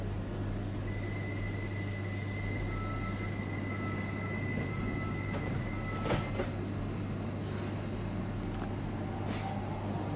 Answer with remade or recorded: recorded